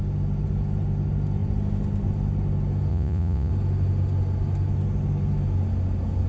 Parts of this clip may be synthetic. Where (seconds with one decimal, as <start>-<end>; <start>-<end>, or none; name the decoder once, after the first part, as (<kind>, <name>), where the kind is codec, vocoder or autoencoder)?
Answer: 2.9-3.5 (vocoder, Vocos)